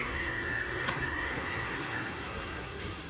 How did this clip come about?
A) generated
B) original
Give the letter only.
A